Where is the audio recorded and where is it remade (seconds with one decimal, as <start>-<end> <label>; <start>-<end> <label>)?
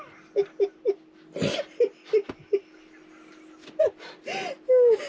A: 0.0-5.1 recorded